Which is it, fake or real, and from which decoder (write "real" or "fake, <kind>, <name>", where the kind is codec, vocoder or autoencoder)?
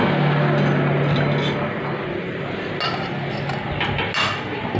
real